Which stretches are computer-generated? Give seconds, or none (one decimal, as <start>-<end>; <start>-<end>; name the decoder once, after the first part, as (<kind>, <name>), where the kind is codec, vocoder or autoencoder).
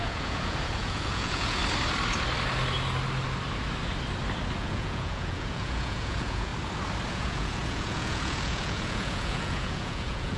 0.0-1.6 (vocoder, Vocos); 4.6-6.5; 7.1-10.4